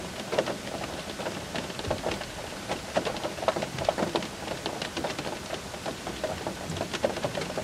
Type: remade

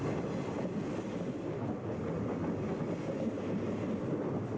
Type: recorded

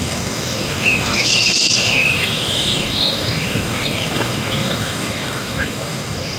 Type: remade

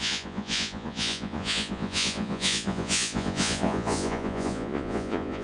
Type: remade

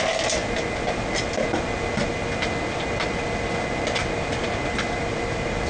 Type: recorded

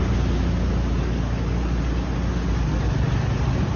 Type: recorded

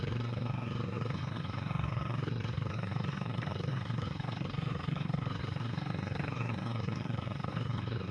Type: remade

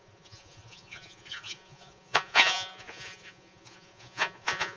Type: remade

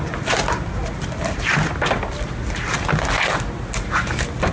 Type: recorded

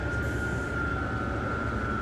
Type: remade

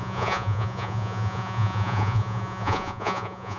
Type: remade